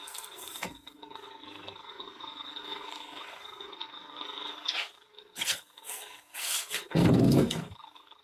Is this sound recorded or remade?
remade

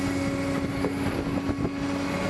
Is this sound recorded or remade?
recorded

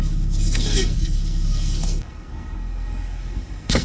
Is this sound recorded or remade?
remade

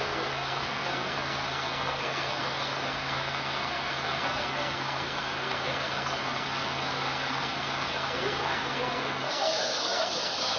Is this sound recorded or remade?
remade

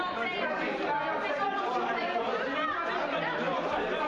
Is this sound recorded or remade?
recorded